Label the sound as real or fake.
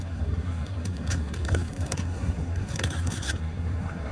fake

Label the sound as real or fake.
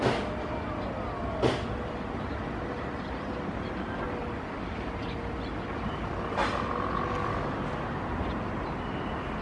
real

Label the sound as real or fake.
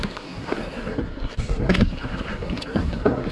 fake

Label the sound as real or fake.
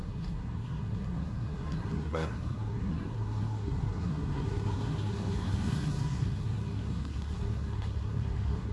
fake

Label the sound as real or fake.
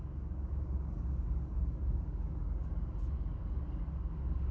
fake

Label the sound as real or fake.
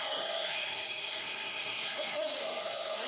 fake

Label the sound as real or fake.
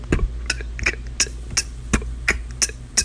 real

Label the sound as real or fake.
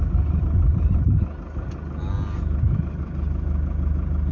real